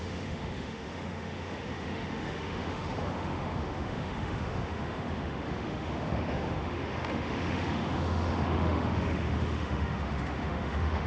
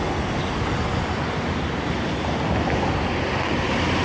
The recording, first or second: second